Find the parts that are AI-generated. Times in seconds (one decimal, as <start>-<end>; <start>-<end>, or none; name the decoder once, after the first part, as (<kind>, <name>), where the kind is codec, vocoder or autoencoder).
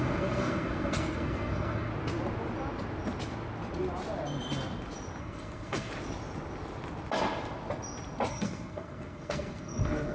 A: 0.0-1.9 (codec, SNAC); 5.2-5.9; 8.3-10.1